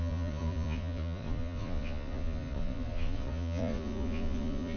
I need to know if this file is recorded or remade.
remade